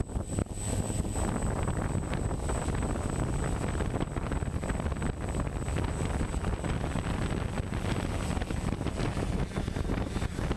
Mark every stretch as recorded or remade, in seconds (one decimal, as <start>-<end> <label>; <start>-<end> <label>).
0.0-10.6 recorded